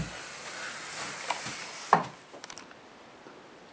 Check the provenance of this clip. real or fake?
real